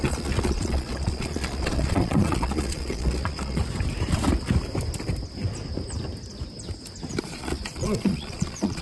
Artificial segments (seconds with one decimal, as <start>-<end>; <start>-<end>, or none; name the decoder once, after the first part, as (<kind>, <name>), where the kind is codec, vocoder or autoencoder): 0.0-3.6 (vocoder, Vocos); 7.2-8.8

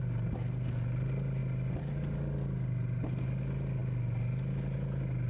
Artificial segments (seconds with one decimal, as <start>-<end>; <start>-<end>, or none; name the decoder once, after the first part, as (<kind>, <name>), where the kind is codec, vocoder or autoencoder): none

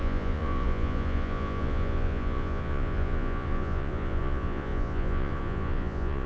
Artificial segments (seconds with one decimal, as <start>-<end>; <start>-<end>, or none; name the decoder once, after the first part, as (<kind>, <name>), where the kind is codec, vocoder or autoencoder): 0.0-6.3 (vocoder, Vocos)

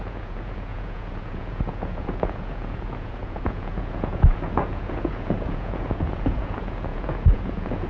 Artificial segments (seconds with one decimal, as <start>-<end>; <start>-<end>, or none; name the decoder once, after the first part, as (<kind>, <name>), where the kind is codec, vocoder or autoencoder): 0.0-7.9 (vocoder, Vocos)

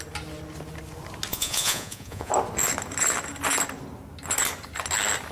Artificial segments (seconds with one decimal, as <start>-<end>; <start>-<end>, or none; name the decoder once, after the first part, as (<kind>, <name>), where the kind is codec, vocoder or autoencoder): 1.3-2.3 (vocoder, Vocos)

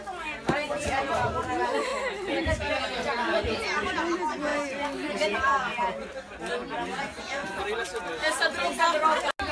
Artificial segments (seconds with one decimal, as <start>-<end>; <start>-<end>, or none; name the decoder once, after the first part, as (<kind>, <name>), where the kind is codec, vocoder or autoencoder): 7.1-7.6 (vocoder, Vocos)